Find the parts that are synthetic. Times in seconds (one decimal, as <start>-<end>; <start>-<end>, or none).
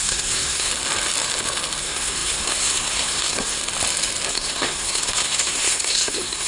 0.0-0.7; 1.8-3.6; 4.3-6.5